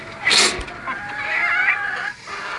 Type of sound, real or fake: real